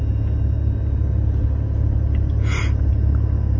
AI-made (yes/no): no